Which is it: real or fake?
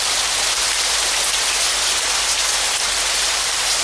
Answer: fake